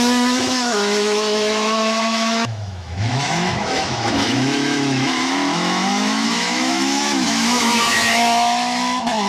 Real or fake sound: fake